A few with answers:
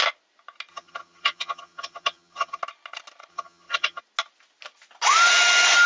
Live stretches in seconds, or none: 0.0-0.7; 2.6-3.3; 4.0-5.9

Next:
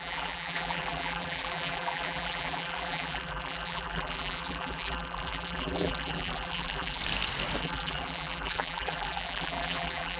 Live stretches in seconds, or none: 7.0-7.6